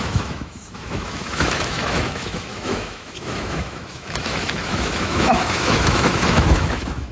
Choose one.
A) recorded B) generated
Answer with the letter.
B